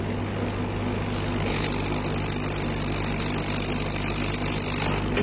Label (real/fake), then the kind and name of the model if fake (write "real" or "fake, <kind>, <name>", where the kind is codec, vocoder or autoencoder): real